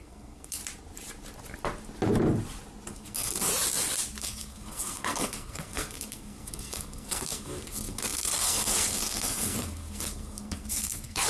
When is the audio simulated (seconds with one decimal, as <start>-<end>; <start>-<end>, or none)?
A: 0.0-0.6; 2.9-3.5; 4.2-11.3